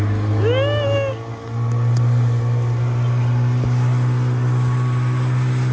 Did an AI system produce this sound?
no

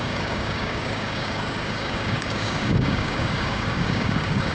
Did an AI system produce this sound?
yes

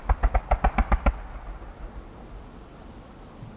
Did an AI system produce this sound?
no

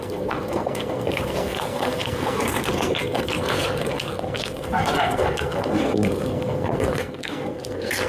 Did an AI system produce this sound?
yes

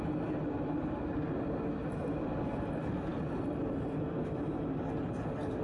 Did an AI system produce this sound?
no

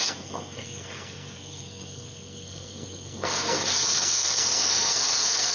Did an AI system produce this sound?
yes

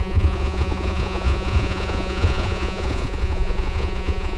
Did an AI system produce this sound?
yes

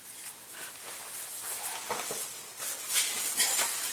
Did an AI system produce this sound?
no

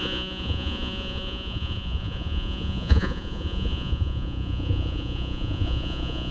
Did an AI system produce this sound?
yes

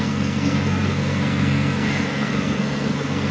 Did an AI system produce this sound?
yes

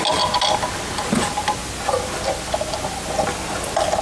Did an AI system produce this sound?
no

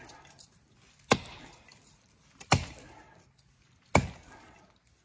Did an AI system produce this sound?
no